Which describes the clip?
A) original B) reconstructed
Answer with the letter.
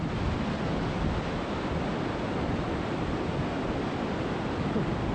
A